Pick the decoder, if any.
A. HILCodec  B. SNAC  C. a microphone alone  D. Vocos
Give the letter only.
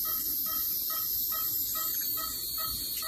C